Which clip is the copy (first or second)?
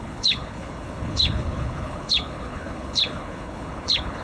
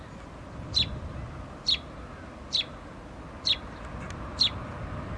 first